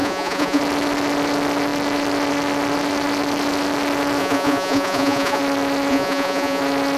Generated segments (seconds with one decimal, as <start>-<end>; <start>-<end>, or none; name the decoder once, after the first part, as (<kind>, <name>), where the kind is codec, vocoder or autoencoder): 0.0-0.6 (vocoder, Vocos); 4.2-5.4; 5.9-6.6